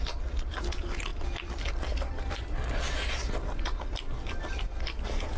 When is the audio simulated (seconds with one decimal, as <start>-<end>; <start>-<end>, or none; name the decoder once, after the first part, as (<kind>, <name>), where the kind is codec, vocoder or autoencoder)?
none